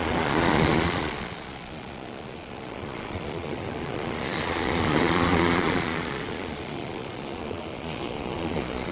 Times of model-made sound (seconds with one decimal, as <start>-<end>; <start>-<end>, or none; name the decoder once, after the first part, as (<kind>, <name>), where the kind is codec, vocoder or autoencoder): 0.0-8.9 (vocoder, Vocos)